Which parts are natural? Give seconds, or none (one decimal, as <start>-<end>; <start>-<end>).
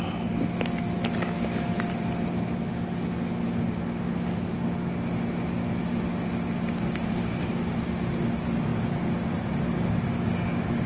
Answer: 0.0-1.1; 1.9-10.9